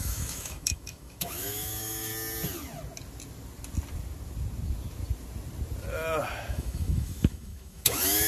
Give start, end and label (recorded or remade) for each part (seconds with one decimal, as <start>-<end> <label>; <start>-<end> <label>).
0.0-2.1 remade; 2.1-6.5 recorded; 6.5-8.3 remade

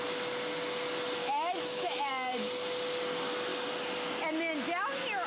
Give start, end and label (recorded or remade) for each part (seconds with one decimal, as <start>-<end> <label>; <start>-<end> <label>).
0.0-1.2 recorded; 1.2-2.1 remade; 2.1-5.3 recorded

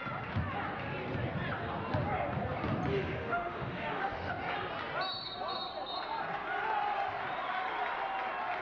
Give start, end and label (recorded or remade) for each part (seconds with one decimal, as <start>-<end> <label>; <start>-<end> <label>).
0.0-2.9 recorded; 2.9-4.3 remade; 4.3-8.6 recorded

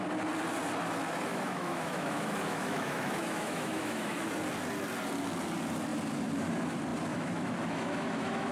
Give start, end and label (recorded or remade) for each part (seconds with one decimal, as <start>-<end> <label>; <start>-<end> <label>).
0.0-1.3 recorded; 1.3-4.3 remade; 4.3-7.1 recorded; 7.1-8.5 remade

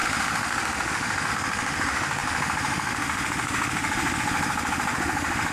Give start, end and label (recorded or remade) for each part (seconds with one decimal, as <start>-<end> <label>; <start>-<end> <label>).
0.0-5.5 remade

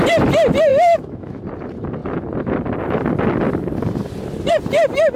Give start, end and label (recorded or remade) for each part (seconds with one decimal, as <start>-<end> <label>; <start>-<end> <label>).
0.0-0.7 recorded; 0.7-1.4 remade; 1.4-5.2 recorded

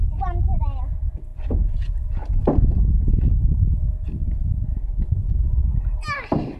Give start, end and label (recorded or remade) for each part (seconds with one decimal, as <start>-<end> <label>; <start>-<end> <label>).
0.0-6.6 recorded

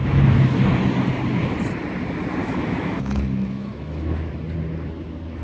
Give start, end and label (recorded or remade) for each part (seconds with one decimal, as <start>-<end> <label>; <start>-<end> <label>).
0.0-0.6 remade; 0.6-2.4 recorded; 2.4-4.3 remade; 4.3-5.4 recorded